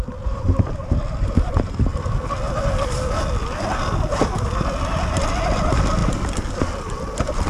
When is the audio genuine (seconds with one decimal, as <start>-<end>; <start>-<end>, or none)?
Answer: 0.0-7.5